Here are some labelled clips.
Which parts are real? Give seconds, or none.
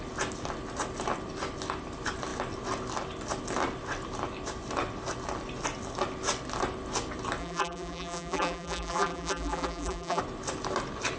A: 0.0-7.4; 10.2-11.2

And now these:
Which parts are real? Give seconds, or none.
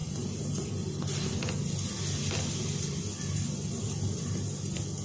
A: 0.7-5.0